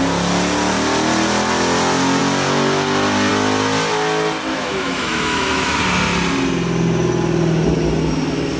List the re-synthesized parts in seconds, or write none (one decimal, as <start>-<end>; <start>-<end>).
4.5-5.8